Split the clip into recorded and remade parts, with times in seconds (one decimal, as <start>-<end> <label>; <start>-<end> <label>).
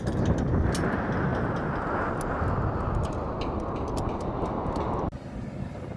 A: 0.0-6.0 recorded